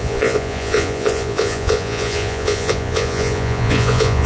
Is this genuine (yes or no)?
no